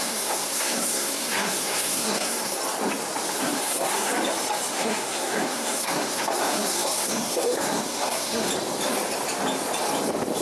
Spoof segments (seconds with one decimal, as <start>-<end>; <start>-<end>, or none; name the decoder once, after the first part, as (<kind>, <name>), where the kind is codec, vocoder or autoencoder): 0.0-2.6 (codec, SNAC); 3.3-4.1; 4.7-8.5